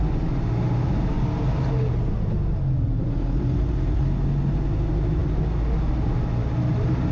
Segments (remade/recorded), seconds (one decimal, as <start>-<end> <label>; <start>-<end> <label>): 0.0-7.1 recorded